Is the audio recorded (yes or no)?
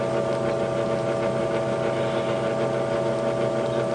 yes